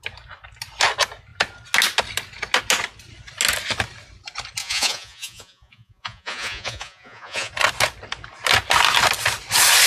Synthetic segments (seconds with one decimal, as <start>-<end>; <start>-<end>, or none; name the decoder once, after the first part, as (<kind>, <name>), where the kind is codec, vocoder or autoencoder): 4.6-7.5 (vocoder, Vocos)